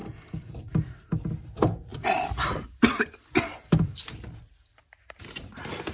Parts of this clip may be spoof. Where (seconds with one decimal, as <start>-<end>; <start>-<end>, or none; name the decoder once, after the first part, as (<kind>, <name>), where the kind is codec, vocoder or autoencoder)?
0.0-0.7 (vocoder, BigVGAN v2); 1.9-5.4